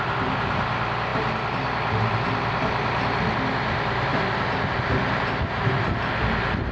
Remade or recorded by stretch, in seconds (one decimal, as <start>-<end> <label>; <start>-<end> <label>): 0.0-6.7 recorded